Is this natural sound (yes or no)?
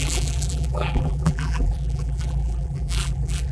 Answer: no